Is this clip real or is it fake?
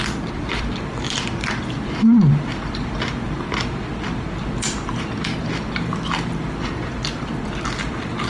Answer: fake